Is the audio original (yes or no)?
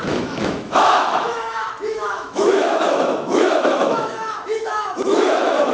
no